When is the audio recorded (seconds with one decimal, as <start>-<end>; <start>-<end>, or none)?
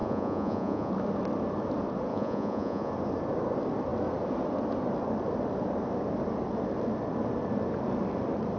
0.9-2.1; 2.9-8.6